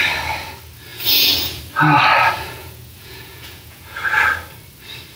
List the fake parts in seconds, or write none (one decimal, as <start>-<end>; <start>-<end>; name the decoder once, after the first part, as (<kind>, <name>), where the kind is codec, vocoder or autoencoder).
0.9-1.6 (vocoder, Vocos); 2.6-4.2